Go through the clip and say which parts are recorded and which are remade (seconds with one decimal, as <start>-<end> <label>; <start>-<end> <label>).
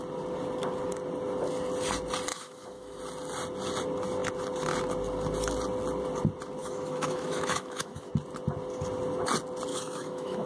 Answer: 0.0-2.3 recorded; 2.3-3.0 remade; 3.0-6.6 recorded; 6.6-8.1 remade; 8.1-9.7 recorded; 9.7-10.5 remade